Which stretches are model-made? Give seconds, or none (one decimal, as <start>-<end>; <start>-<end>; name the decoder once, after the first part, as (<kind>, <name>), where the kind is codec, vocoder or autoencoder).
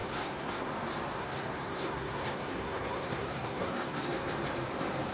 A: 0.0-0.7 (codec, SNAC); 1.2-4.3